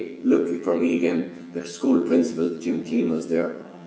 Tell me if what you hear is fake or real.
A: fake